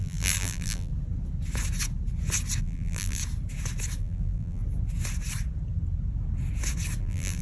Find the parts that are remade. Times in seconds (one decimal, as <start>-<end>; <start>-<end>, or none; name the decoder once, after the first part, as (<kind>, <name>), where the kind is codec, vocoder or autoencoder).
0.0-0.9 (vocoder, BigVGAN v2); 2.6-3.2; 4.0-4.6; 7.0-7.4